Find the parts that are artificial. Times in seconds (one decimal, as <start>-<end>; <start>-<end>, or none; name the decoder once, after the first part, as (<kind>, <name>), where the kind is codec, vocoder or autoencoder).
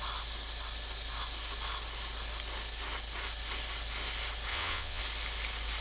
4.5-5.0 (vocoder, WaveNeXt)